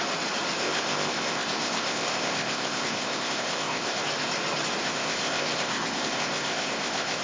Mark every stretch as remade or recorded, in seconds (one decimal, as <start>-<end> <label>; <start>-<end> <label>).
0.0-0.6 recorded; 0.6-4.0 remade; 4.0-4.8 recorded; 4.8-7.2 remade